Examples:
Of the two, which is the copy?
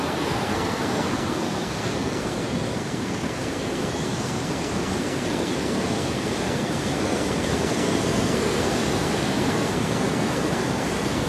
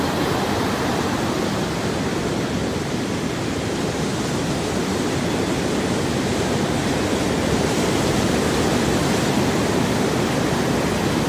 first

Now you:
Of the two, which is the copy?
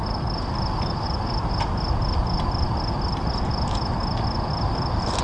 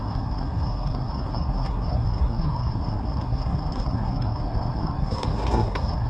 second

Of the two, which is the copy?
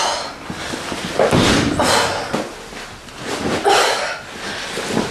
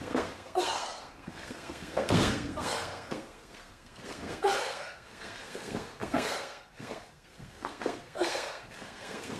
second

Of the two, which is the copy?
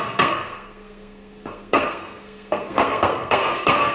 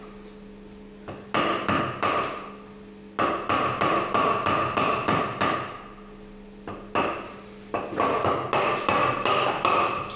first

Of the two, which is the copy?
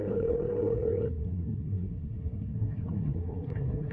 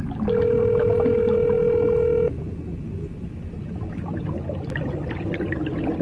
first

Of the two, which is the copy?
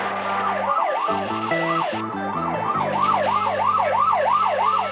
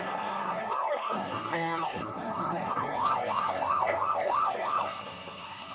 second